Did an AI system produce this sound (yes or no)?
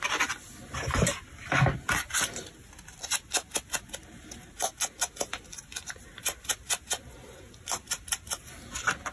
no